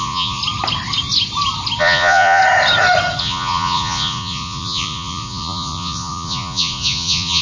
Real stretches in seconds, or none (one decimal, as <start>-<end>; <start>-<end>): 0.4-1.8; 2.4-3.2